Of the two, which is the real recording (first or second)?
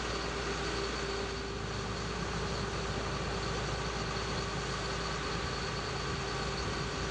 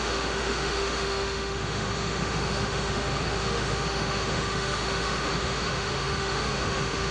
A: first